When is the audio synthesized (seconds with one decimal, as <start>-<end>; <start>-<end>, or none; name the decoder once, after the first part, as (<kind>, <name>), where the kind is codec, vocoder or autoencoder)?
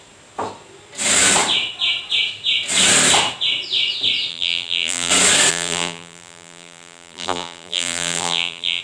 4.3-5.1 (vocoder, BigVGAN v2); 5.5-8.8